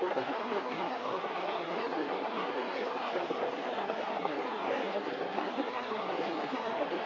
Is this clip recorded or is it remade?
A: remade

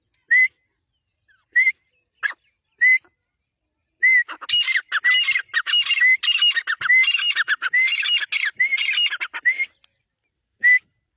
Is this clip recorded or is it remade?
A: recorded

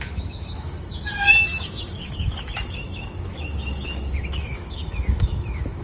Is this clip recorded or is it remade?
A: remade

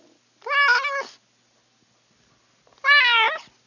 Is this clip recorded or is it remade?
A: recorded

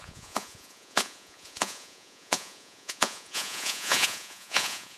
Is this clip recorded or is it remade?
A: remade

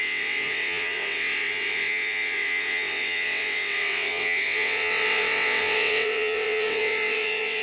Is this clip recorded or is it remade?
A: remade